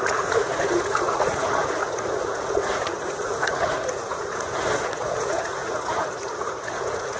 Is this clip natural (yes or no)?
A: no